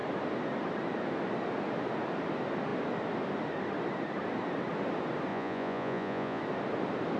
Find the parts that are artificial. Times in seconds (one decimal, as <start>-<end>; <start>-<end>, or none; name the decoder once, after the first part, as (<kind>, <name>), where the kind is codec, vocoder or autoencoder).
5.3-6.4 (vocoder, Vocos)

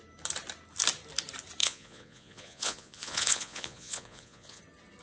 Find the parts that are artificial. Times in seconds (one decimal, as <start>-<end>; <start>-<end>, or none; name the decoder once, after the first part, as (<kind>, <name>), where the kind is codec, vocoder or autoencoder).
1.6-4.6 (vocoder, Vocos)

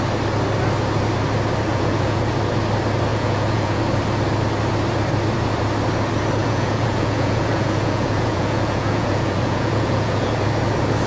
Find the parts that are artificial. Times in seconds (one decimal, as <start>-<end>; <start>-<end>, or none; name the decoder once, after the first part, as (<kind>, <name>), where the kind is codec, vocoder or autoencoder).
1.7-2.3 (vocoder, Vocos); 3.1-3.8; 6.4-10.5

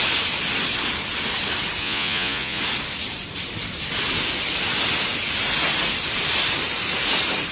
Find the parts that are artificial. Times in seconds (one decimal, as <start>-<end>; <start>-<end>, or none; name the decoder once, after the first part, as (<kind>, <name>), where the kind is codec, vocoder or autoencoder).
1.8-2.6 (vocoder, Vocos)

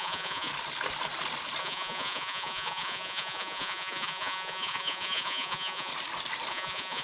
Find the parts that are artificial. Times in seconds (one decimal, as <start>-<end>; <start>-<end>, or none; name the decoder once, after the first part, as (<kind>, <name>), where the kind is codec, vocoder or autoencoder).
0.0-0.5 (vocoder, Vocos); 1.6-5.9; 6.5-7.0

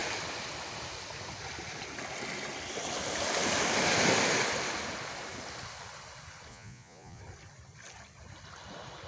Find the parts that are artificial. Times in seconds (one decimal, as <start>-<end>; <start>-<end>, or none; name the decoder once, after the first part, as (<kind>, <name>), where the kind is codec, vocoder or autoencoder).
6.5-7.2 (vocoder, Vocos)